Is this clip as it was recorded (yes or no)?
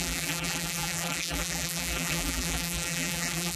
no